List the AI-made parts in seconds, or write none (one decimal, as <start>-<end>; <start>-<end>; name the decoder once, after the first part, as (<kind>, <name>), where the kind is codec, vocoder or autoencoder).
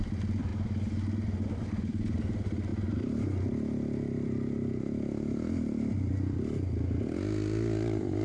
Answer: 0.0-0.5 (vocoder, BigVGAN v2); 1.4-8.2